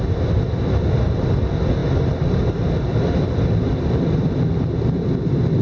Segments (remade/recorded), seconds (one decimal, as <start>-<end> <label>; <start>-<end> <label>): 0.0-1.8 recorded; 1.8-4.7 remade; 4.7-5.6 recorded